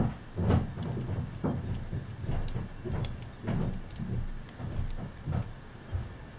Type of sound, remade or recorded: recorded